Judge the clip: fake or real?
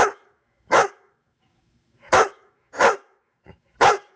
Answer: fake